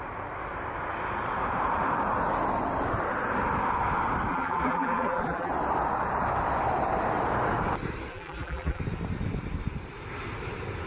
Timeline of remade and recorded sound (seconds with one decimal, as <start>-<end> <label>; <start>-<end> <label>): 0.0-4.3 recorded; 4.3-5.5 remade; 5.5-8.1 recorded; 8.1-8.8 remade; 8.8-10.9 recorded